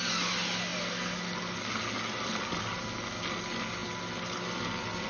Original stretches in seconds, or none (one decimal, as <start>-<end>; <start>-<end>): 0.0-5.1